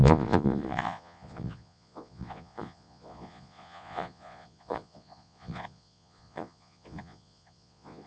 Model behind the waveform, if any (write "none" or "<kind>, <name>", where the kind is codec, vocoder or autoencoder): vocoder, Vocos